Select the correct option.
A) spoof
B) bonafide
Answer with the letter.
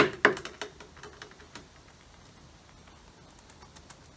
B